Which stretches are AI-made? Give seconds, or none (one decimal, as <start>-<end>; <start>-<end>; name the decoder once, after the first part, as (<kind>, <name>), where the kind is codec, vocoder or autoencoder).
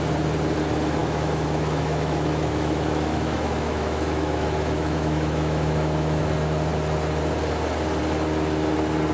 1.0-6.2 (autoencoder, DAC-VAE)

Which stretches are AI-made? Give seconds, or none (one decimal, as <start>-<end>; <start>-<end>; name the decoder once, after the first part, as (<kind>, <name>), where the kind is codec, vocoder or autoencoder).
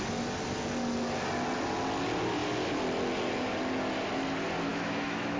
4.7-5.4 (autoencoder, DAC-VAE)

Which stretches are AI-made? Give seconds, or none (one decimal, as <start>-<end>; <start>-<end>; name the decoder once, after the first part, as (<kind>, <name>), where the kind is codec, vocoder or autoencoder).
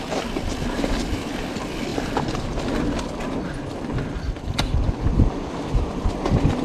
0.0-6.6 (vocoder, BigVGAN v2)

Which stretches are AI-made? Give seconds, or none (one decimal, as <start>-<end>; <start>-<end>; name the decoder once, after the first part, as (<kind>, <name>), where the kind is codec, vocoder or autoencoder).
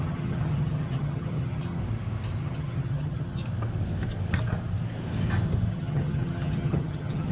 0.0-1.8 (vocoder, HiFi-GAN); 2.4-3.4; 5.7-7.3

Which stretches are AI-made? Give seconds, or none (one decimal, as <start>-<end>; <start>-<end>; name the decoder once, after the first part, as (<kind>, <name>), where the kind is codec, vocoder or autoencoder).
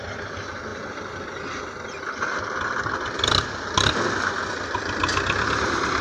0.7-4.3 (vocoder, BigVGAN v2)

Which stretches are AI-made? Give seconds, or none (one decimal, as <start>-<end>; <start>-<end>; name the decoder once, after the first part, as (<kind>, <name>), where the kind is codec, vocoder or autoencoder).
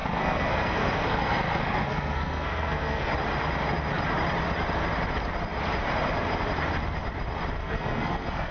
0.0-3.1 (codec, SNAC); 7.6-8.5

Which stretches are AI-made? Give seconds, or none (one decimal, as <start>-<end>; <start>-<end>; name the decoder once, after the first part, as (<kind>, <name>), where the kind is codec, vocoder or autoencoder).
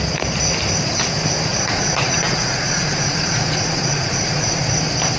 1.5-4.6 (vocoder, Vocos)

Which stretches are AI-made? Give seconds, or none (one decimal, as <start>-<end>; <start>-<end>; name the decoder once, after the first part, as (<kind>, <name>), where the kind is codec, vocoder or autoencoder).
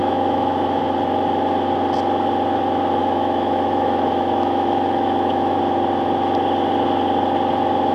0.0-0.8 (autoencoder, DAC-VAE); 3.0-5.6